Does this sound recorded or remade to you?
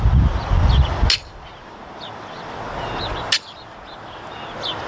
recorded